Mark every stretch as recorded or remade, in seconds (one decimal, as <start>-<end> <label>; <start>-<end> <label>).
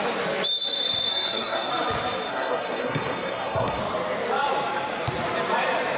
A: 0.0-1.1 recorded; 1.1-1.7 remade; 1.7-2.3 recorded; 2.3-3.8 remade; 3.8-6.0 recorded